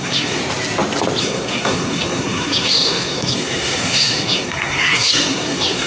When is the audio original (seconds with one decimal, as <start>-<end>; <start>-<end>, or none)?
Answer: 0.4-1.2